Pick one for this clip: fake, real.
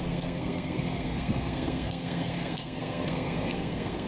fake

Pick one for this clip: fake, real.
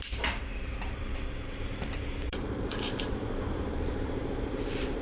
fake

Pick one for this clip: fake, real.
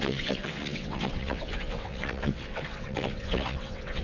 fake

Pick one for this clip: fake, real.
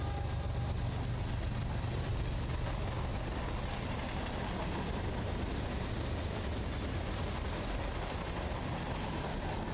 real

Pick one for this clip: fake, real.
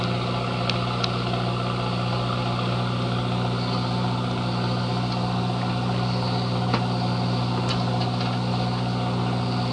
real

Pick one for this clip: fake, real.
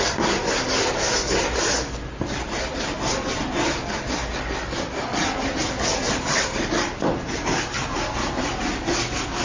real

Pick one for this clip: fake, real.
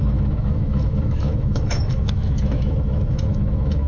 fake